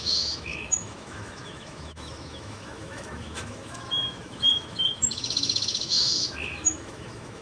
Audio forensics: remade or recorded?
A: remade